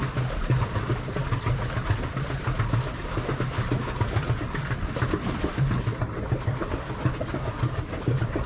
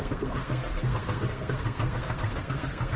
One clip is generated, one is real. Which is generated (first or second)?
second